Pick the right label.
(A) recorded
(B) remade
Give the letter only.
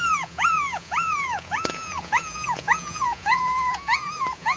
B